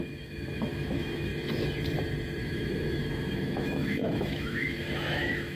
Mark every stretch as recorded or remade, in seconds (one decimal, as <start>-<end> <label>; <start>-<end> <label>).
0.0-1.3 remade; 1.3-2.4 recorded; 2.4-5.6 remade